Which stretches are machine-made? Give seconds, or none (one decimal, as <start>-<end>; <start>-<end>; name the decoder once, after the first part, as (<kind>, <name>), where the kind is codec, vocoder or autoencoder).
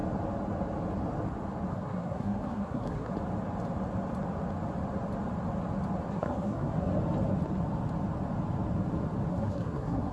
1.7-3.1 (codec, SNAC); 6.1-6.9; 9.3-10.1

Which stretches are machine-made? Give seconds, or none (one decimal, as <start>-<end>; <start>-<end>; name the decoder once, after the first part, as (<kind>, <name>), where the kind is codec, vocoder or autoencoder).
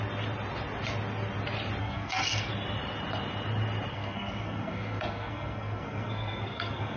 1.8-2.5 (codec, SNAC); 3.9-7.0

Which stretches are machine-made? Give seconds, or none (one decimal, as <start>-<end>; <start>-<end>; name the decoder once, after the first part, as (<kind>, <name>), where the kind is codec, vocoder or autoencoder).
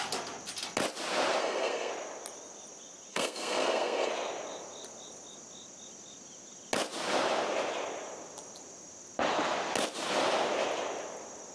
1.4-1.9 (codec, SNAC); 3.1-4.1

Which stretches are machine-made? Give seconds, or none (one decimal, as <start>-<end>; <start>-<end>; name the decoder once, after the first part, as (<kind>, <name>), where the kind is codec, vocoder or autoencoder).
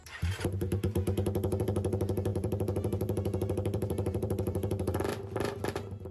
0.0-1.0 (vocoder, BigVGAN v2); 1.6-6.1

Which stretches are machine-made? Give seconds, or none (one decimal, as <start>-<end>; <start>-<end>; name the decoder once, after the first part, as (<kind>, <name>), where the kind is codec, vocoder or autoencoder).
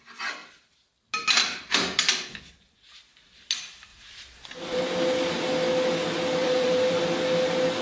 3.9-4.8 (vocoder, BigVGAN v2); 6.4-7.0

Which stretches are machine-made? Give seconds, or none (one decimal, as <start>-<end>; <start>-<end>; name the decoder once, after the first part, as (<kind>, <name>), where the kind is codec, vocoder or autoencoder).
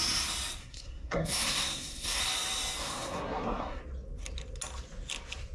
0.6-2.2 (codec, SNAC); 2.8-3.8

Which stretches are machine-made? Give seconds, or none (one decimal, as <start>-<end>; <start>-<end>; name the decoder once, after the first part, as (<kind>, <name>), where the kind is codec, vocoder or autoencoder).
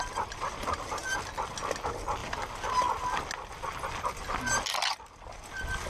none